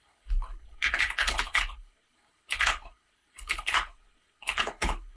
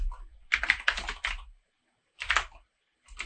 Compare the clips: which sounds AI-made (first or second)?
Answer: first